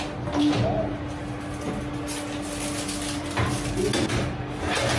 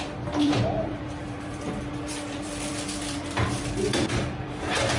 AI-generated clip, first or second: second